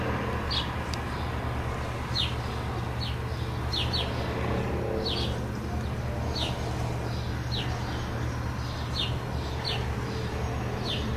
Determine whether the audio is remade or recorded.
recorded